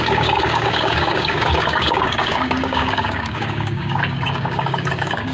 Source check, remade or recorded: remade